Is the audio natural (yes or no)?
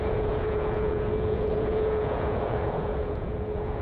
no